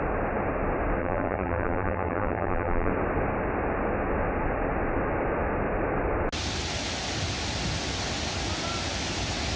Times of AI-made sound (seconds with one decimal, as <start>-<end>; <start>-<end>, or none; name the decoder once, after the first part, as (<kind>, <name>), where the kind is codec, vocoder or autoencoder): 1.0-2.9 (vocoder, BigVGAN v2)